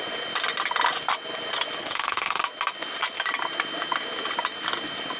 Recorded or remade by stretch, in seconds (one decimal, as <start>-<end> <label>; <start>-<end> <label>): 0.0-1.8 recorded; 1.8-2.4 remade; 2.4-5.2 recorded